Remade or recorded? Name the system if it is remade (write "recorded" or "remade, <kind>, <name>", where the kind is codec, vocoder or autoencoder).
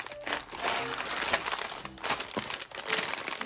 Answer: recorded